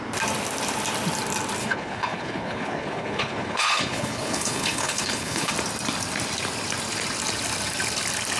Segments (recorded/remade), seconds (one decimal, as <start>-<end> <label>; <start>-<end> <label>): 0.0-1.6 recorded; 1.6-5.5 remade; 5.5-8.4 recorded